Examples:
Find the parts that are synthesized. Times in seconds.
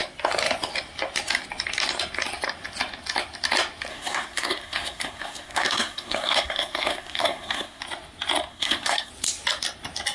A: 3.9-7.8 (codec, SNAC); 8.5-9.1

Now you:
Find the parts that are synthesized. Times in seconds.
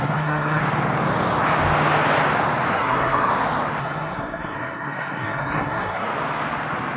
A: 0.0-0.6 (codec, SNAC); 2.7-3.3; 3.8-6.1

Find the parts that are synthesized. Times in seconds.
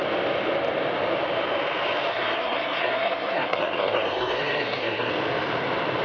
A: 2.1-5.1 (codec, SNAC)